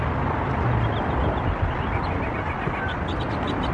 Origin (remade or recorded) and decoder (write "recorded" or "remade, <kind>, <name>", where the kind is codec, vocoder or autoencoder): recorded